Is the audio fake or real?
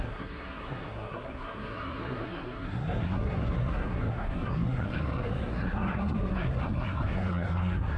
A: fake